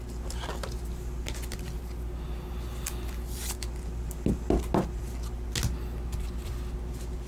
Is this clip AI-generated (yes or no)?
no